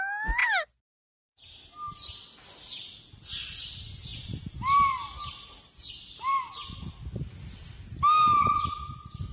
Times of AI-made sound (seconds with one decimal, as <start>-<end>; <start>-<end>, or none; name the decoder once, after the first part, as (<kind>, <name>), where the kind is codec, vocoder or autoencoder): none